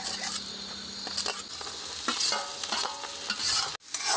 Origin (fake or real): real